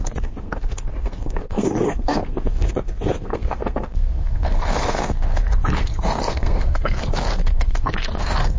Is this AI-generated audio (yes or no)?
yes